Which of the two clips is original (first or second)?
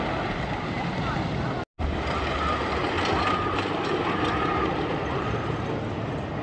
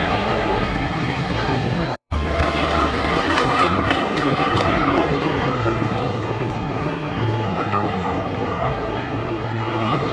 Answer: first